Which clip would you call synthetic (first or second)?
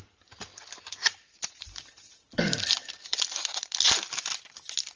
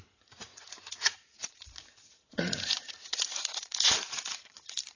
second